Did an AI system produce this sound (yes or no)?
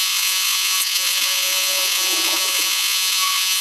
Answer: yes